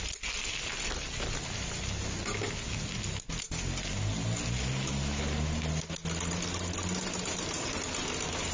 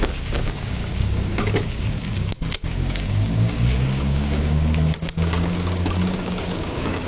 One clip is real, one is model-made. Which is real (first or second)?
first